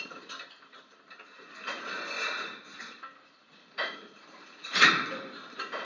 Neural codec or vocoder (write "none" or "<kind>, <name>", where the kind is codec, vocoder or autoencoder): vocoder, BigVGAN v2